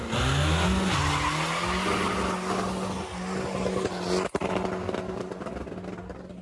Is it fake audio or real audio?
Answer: real